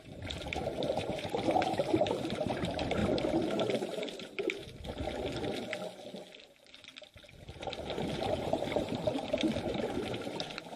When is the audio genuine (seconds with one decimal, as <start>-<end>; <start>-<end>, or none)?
3.0-3.5; 4.6-6.4

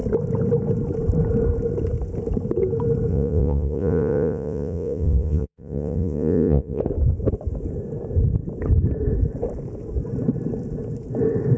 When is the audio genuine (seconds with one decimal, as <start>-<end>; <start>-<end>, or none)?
0.0-3.1; 6.8-11.6

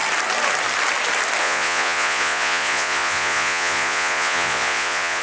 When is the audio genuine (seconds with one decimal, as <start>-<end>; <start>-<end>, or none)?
0.0-1.4

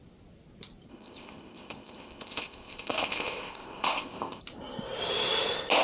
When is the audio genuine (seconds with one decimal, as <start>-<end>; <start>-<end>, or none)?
0.0-0.9; 4.4-5.8

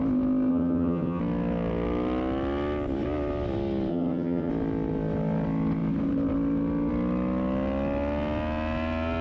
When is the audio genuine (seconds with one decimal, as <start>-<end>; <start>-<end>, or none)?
0.0-0.5; 1.2-3.9; 4.5-9.2

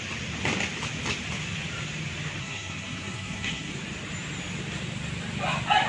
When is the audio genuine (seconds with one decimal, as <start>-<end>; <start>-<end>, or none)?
0.0-2.4; 3.7-5.9

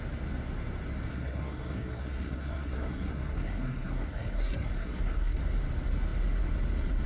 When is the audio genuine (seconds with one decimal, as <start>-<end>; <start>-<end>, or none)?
0.0-1.1; 5.4-7.1

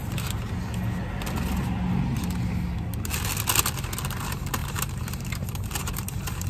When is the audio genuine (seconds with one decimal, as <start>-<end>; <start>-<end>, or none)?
0.0-4.6